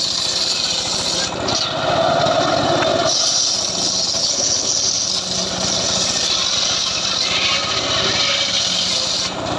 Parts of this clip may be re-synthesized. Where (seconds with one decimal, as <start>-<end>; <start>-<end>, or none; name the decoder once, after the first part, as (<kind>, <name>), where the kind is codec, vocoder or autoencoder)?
4.2-4.7 (codec, HILCodec)